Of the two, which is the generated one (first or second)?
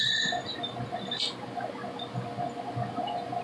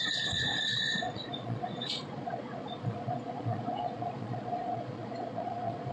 second